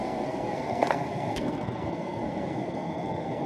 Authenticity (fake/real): fake